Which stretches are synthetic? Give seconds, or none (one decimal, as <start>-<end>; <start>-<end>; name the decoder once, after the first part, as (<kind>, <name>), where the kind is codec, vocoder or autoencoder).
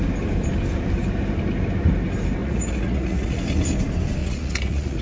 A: 2.4-3.4 (vocoder, Vocos); 4.2-5.0